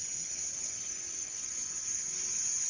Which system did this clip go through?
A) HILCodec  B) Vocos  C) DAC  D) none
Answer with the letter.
B